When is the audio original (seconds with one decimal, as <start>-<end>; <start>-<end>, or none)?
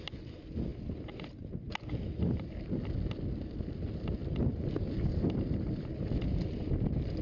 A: 0.0-7.2